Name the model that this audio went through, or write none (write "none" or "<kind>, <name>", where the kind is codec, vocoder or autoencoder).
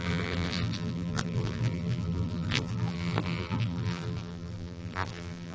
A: vocoder, BigVGAN v2